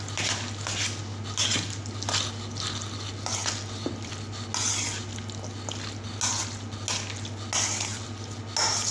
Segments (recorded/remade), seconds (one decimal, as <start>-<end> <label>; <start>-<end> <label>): 0.0-3.4 recorded; 3.4-4.1 remade; 4.1-7.9 recorded; 7.9-8.4 remade; 8.4-8.9 recorded